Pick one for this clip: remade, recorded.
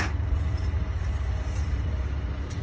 remade